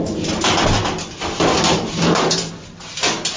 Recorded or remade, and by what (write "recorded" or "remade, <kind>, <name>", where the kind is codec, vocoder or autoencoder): recorded